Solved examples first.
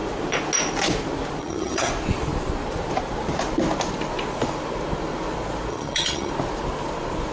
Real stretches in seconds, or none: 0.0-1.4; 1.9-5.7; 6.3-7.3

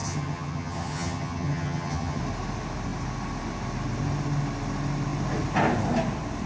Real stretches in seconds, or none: 2.2-6.5